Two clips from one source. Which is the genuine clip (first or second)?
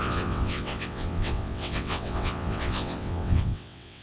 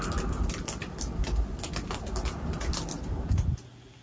second